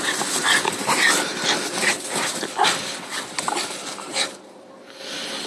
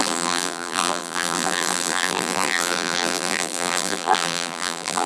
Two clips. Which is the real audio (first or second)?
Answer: first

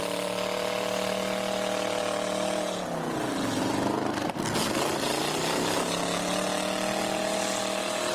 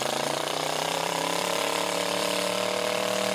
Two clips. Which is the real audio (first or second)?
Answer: first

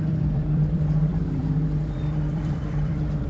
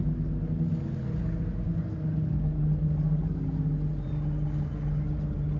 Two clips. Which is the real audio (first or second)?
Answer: second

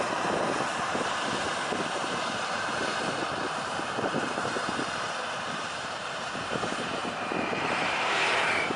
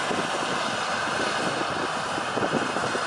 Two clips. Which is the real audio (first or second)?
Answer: second